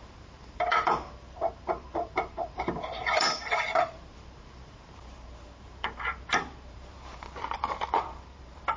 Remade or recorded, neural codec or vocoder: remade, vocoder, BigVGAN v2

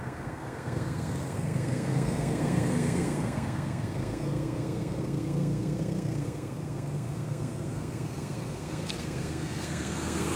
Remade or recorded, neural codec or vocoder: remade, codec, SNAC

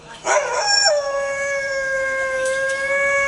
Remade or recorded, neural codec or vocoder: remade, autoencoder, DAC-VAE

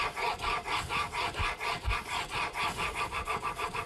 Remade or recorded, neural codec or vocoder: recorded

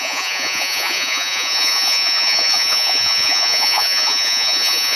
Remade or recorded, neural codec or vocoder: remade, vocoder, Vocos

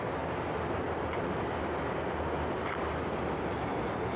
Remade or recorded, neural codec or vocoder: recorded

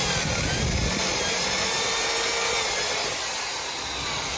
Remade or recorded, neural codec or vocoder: recorded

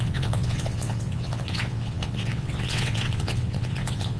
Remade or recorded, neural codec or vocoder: remade, vocoder, WaveNeXt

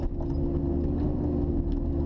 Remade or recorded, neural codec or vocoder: recorded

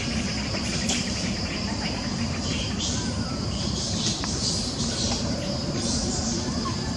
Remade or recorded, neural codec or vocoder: remade, vocoder, BigVGAN v2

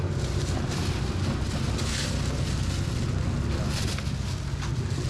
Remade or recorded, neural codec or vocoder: recorded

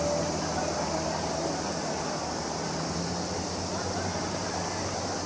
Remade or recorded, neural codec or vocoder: recorded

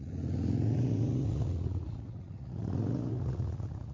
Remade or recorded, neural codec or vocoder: remade, vocoder, Vocos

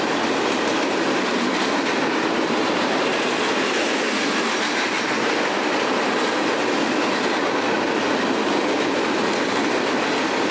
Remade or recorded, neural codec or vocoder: recorded